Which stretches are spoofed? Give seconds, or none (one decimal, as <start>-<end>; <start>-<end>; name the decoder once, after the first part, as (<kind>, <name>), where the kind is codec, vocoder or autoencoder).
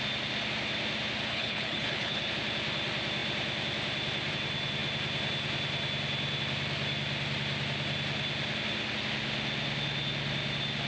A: 1.3-2.3 (codec, HILCodec)